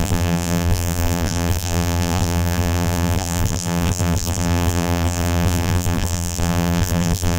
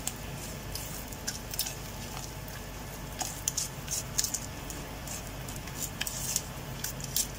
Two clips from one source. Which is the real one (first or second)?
second